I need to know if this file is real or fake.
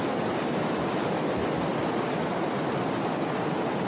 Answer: real